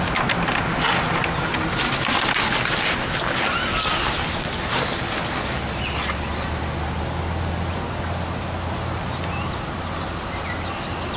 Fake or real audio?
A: real